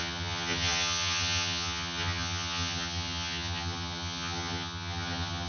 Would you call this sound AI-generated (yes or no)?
yes